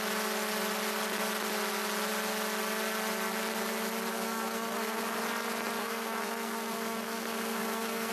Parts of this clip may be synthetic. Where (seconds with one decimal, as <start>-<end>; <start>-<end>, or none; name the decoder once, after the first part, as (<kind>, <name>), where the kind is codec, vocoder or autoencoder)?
4.1-5.0 (codec, SNAC); 5.8-8.1